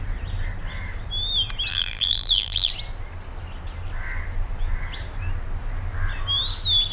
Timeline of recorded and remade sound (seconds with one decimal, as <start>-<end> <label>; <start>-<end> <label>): 0.0-1.7 recorded; 1.7-2.7 remade; 2.7-6.9 recorded